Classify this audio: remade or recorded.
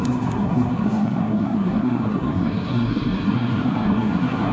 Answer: remade